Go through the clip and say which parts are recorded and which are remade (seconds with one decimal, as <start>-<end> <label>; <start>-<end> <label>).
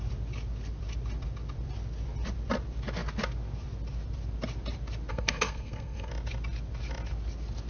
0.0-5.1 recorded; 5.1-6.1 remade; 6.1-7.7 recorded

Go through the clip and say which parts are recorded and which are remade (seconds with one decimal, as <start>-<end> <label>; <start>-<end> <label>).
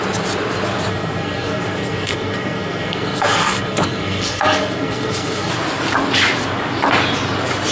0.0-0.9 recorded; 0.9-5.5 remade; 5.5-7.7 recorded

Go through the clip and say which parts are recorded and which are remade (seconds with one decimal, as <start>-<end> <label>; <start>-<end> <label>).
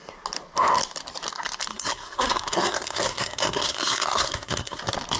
0.0-1.7 recorded; 1.7-4.8 remade; 4.8-5.2 recorded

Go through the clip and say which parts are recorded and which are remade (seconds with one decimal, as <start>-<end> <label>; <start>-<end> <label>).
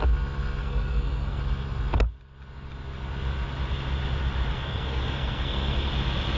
0.0-0.6 recorded; 0.6-1.4 remade; 1.4-4.5 recorded; 4.5-5.9 remade; 5.9-6.4 recorded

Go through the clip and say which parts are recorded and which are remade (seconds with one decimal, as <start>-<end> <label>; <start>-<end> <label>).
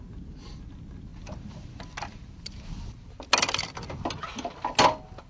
0.0-5.3 recorded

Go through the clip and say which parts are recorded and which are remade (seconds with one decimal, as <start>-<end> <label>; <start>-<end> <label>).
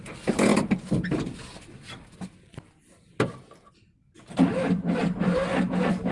0.0-6.1 recorded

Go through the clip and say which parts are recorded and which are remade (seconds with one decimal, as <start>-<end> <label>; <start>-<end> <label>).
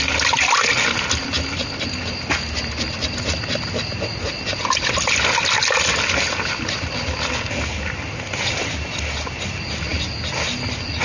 0.0-11.0 recorded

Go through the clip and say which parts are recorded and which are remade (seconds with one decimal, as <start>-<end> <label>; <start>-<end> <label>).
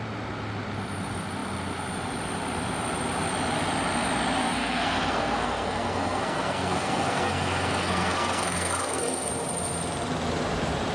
0.0-4.4 recorded; 4.4-9.3 remade; 9.3-10.9 recorded